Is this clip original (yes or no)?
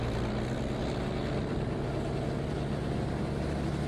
yes